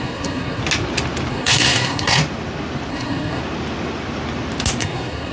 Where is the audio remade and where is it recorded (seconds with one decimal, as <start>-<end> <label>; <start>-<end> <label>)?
0.0-0.6 remade; 0.6-1.3 recorded; 1.3-2.2 remade; 2.2-2.9 recorded; 2.9-3.4 remade; 3.4-4.8 recorded; 4.8-5.3 remade